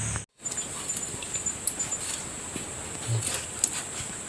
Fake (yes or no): no